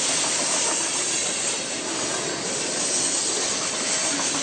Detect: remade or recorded recorded